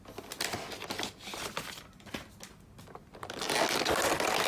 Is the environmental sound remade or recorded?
recorded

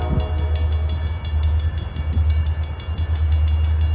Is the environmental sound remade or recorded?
recorded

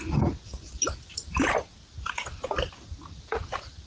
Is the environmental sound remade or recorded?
recorded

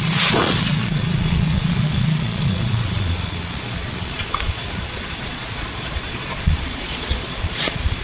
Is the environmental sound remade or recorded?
remade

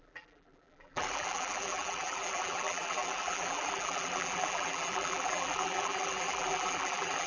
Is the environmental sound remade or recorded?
remade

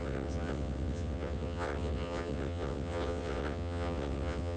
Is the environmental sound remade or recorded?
remade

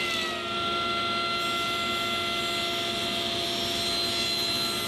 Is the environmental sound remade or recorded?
recorded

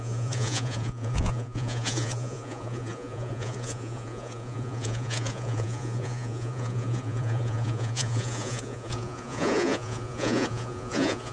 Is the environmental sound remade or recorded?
remade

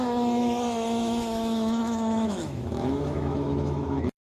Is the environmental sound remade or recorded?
remade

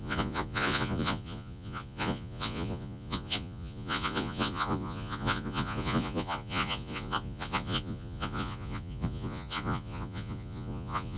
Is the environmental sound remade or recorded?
remade